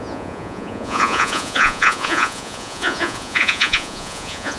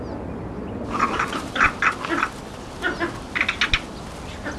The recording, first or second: second